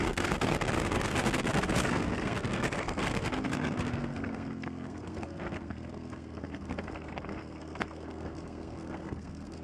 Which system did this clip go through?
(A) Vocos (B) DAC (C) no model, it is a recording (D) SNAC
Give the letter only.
D